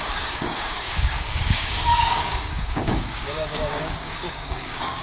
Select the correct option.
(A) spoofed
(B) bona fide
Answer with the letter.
A